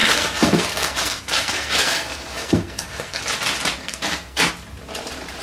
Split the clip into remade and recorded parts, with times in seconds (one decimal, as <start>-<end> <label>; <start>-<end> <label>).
0.0-3.2 remade; 3.2-3.8 recorded; 3.8-4.5 remade; 4.5-5.4 recorded